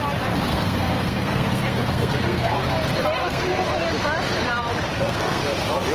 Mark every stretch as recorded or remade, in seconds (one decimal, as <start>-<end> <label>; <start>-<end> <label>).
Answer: 0.0-0.5 recorded; 0.5-2.6 remade; 2.6-3.2 recorded; 3.2-3.7 remade; 3.7-4.9 recorded; 4.9-5.4 remade; 5.4-5.9 recorded